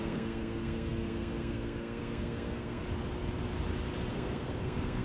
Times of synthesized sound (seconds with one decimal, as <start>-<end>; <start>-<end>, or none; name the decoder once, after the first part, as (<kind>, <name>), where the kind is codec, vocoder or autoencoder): 0.0-2.8 (codec, SNAC); 4.1-5.0